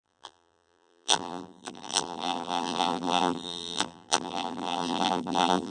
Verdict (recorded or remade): remade